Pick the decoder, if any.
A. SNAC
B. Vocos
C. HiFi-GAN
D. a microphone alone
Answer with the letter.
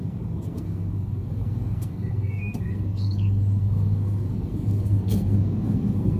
A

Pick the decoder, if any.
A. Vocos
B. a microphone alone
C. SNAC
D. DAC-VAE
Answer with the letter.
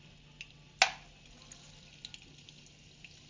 B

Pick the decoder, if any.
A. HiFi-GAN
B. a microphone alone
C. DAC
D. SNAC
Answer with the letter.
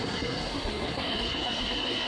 D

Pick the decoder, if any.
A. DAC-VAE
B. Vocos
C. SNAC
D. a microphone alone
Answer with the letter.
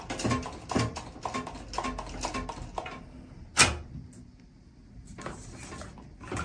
D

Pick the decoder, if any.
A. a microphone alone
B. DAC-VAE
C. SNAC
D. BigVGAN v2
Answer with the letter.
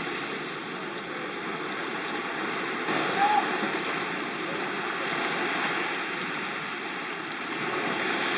A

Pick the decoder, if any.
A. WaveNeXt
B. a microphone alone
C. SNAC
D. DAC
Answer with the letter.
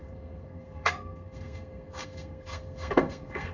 C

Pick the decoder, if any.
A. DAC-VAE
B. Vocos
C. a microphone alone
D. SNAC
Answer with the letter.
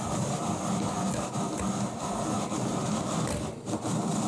C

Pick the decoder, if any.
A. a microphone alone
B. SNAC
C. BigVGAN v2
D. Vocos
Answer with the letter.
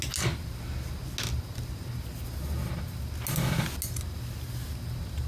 A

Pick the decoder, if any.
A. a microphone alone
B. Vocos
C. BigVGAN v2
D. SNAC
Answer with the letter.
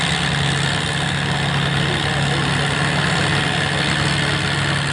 A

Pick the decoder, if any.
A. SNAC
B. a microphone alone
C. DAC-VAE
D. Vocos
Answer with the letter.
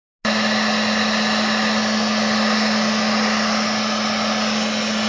B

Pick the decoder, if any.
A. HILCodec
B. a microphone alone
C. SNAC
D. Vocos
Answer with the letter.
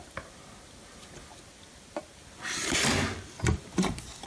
B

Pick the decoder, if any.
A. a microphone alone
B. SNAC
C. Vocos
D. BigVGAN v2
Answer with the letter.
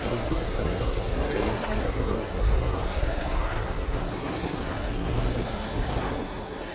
B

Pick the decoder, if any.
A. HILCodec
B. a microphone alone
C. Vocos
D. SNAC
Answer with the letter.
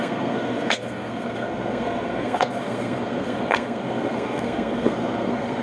D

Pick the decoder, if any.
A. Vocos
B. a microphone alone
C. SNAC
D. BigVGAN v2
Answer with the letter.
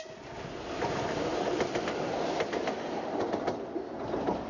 B